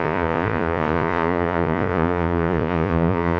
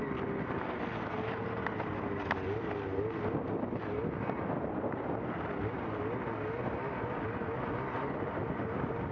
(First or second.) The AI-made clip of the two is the first